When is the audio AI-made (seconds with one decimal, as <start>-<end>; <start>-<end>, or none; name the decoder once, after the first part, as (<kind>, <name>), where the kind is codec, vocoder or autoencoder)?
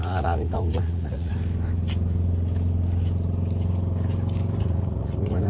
0.0-1.3 (vocoder, Vocos); 4.6-5.5